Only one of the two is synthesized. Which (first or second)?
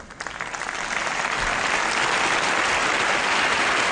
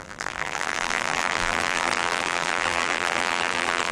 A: second